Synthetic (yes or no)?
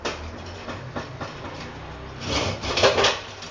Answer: no